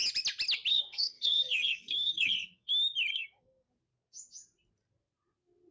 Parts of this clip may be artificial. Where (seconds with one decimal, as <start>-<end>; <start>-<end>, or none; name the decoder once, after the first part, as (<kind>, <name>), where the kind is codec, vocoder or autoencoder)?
0.7-2.7 (codec, SNAC); 3.1-3.7